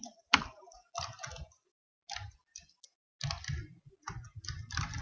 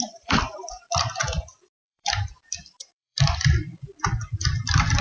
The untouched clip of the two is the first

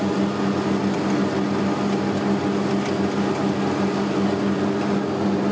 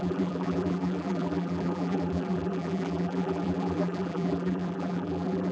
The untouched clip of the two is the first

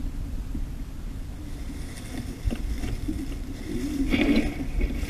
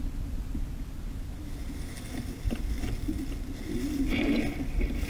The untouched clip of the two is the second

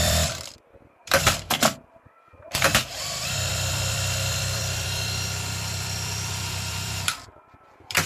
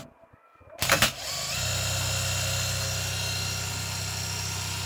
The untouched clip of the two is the second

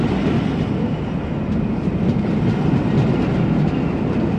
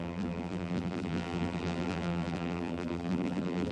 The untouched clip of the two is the first